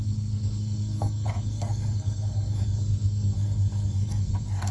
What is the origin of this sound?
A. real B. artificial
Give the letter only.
B